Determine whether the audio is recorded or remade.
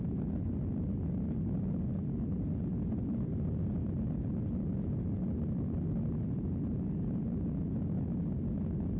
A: recorded